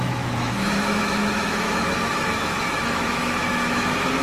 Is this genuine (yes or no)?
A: no